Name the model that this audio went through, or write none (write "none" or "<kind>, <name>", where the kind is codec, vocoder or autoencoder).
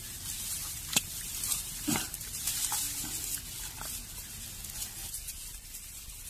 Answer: none